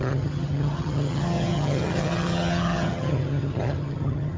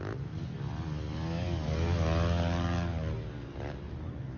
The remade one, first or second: first